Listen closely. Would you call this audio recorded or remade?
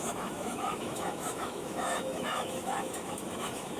remade